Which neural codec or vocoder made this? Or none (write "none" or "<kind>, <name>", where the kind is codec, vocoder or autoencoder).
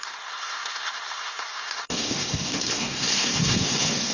codec, SNAC